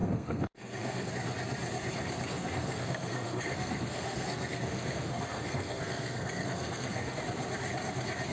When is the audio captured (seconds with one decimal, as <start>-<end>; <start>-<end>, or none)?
1.1-2.3; 7.2-8.3